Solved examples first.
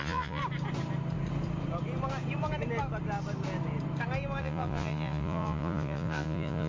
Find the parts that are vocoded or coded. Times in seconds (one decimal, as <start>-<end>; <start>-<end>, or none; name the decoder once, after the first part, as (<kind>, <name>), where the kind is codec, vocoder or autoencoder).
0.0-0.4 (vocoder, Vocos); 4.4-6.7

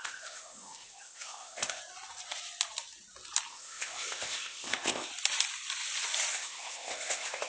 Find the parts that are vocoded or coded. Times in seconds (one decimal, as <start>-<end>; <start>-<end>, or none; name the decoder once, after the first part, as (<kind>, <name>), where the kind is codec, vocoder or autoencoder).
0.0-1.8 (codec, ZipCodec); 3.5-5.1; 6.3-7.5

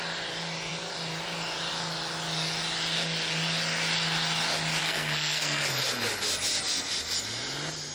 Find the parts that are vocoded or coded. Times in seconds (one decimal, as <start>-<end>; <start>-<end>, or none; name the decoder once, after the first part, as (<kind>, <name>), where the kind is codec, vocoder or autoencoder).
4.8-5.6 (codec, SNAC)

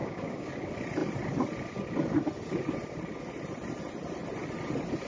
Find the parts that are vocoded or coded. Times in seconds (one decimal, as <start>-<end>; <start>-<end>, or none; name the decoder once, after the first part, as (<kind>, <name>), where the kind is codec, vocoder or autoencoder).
0.0-0.5 (codec, DAC)